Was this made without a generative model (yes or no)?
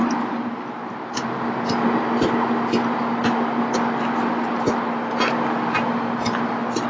yes